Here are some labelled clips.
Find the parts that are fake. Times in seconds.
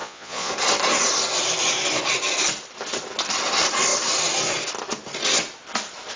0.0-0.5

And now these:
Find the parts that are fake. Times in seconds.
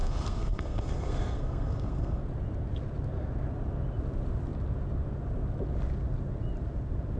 0.0-2.2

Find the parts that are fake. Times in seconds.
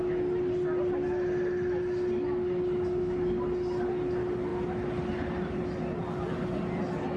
none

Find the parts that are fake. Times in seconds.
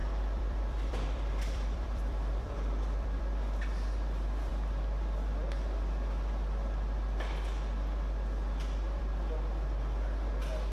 0.0-3.2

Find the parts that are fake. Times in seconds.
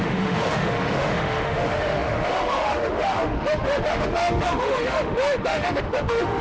0.0-6.4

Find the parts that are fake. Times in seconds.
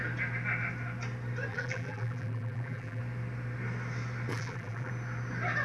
1.5-3.0; 4.3-4.9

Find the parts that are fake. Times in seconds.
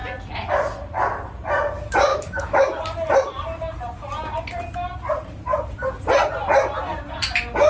2.1-2.8